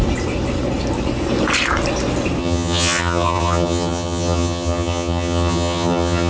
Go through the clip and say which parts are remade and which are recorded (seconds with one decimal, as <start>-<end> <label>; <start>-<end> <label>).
0.0-2.4 recorded; 2.4-6.3 remade